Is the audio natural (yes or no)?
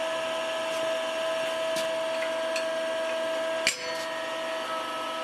yes